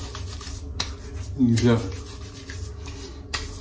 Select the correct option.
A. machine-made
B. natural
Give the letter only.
B